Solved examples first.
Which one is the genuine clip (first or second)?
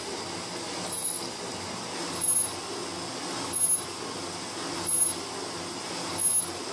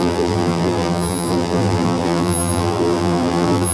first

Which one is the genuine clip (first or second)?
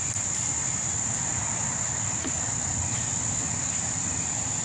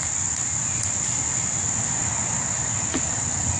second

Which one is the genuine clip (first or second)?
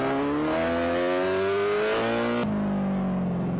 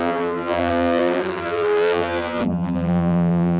first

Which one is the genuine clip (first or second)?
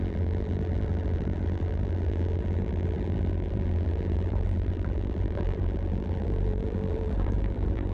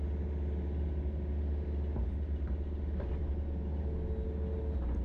second